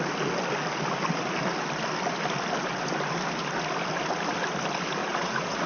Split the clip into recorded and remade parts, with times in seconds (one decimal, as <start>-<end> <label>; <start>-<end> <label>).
0.0-5.0 recorded; 5.0-5.7 remade